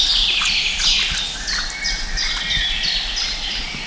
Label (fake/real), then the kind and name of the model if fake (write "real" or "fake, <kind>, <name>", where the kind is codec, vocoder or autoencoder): real